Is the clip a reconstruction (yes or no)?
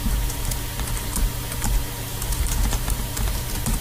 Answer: yes